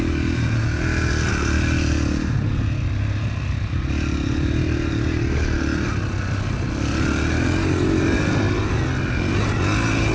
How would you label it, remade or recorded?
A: recorded